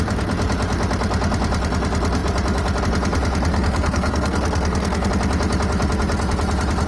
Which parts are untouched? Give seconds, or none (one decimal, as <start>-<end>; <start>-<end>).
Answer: 0.0-3.5; 5.1-6.9